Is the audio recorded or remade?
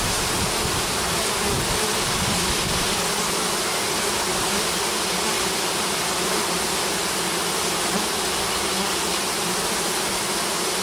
recorded